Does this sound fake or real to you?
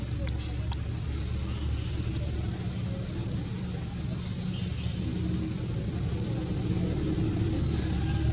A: real